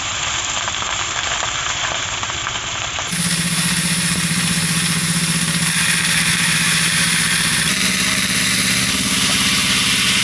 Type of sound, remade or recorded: remade